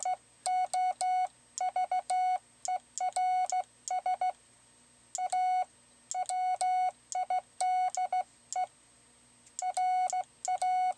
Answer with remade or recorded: recorded